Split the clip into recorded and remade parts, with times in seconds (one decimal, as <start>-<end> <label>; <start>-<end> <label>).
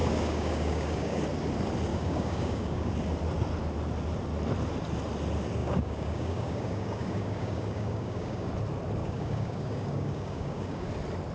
0.0-1.2 remade; 1.2-1.9 recorded; 1.9-2.9 remade; 2.9-5.6 recorded; 5.6-8.5 remade; 8.5-9.0 recorded; 9.0-10.9 remade; 10.9-11.3 recorded